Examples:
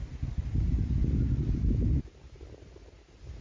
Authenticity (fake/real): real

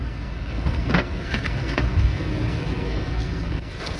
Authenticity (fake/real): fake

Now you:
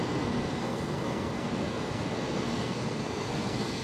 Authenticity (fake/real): fake